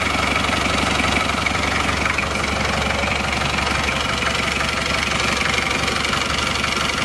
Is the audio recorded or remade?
recorded